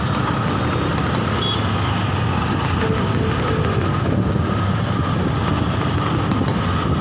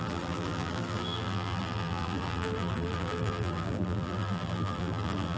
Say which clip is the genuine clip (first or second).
first